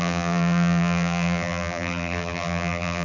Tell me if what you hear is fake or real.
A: fake